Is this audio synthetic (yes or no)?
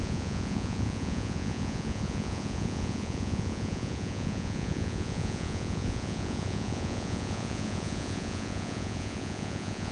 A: yes